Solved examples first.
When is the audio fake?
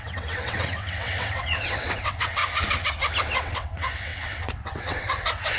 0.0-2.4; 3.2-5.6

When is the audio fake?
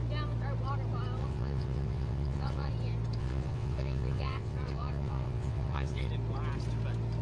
1.2-2.7; 3.2-6.1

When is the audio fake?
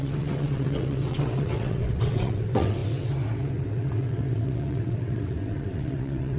0.0-6.4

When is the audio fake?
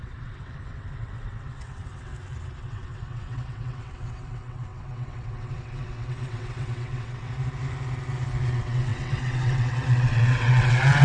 0.0-2.1; 2.6-7.3; 8.5-11.0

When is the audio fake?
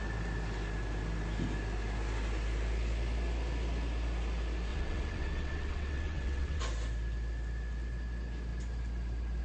4.7-6.6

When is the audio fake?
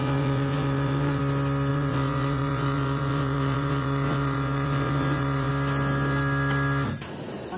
0.0-1.2; 1.7-5.5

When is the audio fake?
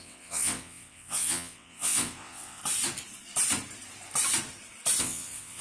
0.0-2.6; 5.0-5.6